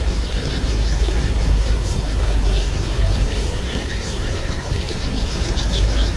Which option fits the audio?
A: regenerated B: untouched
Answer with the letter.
A